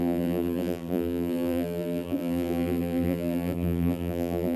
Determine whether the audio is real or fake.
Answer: fake